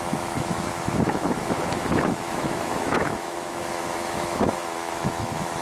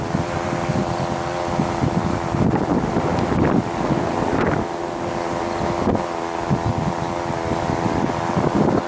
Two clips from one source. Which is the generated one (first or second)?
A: first